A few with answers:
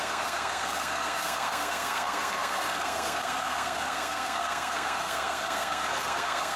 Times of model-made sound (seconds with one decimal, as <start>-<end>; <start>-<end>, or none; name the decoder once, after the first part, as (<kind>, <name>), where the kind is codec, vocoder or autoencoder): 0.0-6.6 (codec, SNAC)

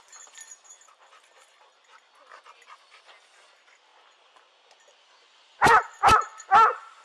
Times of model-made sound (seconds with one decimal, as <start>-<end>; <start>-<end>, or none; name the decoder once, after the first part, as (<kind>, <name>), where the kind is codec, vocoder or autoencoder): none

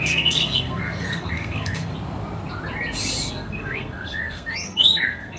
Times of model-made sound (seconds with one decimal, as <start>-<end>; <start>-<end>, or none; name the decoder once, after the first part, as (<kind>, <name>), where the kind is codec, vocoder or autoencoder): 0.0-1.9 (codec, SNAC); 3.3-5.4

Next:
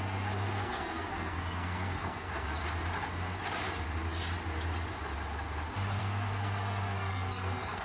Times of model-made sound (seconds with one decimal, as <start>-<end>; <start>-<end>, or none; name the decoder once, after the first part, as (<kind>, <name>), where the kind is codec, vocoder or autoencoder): 0.0-2.6 (codec, SNAC); 6.0-7.8

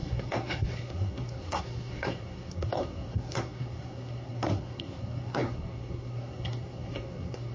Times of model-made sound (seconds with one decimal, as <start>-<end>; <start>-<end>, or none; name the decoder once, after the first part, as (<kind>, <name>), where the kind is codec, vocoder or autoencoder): 0.0-7.5 (codec, SNAC)